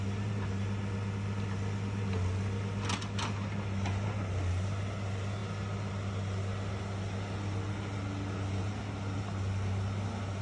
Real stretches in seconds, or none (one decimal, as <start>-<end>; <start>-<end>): 0.0-10.4